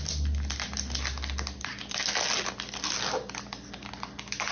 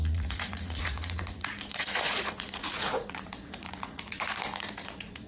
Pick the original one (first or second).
first